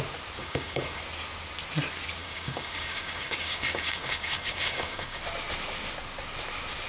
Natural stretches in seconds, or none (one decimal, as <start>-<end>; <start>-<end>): 0.0-0.4; 1.0-2.2; 5.2-6.9